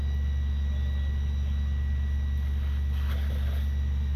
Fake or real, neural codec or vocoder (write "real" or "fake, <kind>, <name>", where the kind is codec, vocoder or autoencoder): real